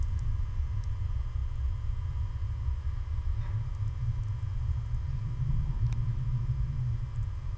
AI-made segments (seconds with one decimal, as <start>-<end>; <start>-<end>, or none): none